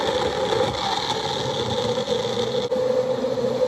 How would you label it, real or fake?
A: real